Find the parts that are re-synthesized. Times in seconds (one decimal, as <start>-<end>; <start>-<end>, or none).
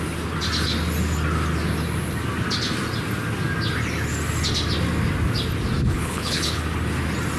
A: 5.8-6.6